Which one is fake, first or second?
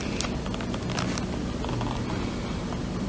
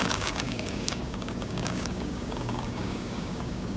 second